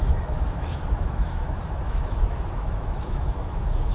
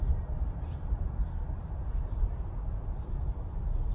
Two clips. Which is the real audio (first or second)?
second